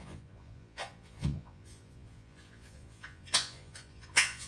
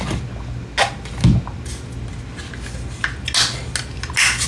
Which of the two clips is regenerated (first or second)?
first